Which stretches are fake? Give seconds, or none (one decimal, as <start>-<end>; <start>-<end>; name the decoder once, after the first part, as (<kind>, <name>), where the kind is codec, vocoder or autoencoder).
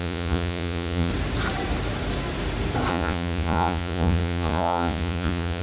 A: 0.0-1.1 (vocoder, Vocos); 2.9-5.6